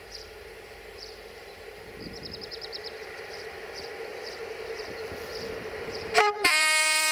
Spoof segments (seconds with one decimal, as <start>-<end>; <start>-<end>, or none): 0.0-4.1; 4.9-7.1